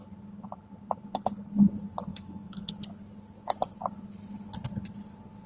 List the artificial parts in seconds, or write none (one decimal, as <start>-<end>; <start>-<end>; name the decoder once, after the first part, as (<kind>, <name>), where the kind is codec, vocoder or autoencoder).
2.1-2.7 (autoencoder, DAC-VAE)